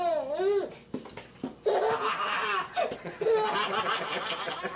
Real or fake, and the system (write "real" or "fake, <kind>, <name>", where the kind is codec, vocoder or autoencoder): real